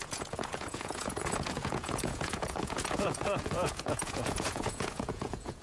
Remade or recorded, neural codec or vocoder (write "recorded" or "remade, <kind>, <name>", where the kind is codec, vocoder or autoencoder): remade, vocoder, Vocos